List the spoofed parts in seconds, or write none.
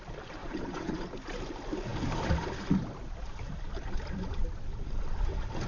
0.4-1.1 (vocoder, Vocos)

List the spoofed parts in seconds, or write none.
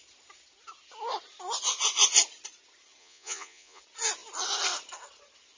3.0-3.8 (vocoder, Vocos)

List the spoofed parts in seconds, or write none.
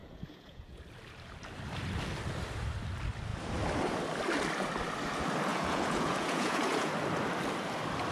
0.0-0.8 (vocoder, Vocos); 5.5-6.9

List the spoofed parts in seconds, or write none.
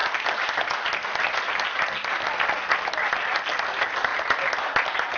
none